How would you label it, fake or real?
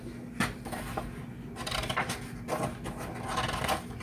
real